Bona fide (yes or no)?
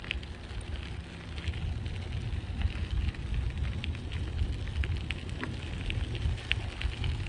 yes